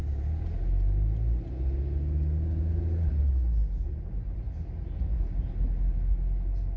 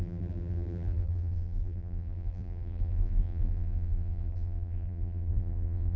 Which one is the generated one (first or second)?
second